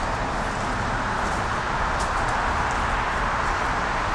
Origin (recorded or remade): recorded